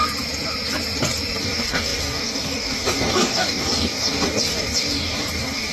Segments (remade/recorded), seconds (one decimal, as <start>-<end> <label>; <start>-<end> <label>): 0.0-1.4 recorded; 1.4-5.7 remade